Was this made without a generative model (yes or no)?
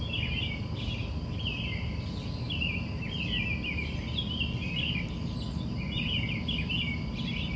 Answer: yes